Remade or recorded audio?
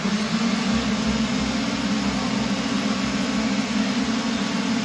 recorded